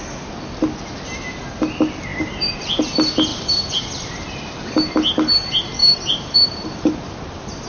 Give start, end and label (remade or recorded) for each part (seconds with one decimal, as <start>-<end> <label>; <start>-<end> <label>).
0.0-2.1 recorded; 2.1-2.8 remade; 2.8-3.3 recorded; 3.3-4.5 remade; 4.5-5.8 recorded; 5.8-7.1 remade; 7.1-7.7 recorded